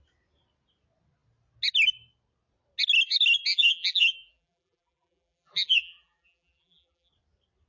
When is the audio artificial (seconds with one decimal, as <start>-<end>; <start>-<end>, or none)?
3.5-7.1